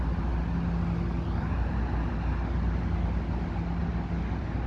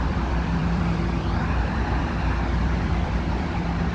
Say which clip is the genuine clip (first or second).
first